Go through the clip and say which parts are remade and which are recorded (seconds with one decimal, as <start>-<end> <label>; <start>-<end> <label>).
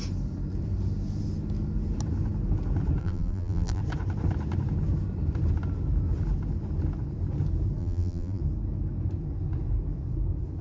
0.0-3.0 recorded; 3.0-3.8 remade; 3.8-7.8 recorded; 7.8-8.4 remade; 8.4-10.6 recorded